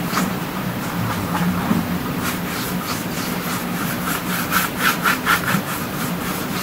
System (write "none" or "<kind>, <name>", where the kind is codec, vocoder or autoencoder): vocoder, BigVGAN v2